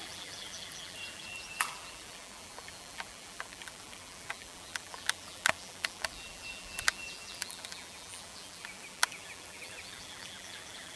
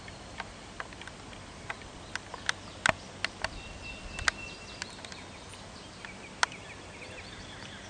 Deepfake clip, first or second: first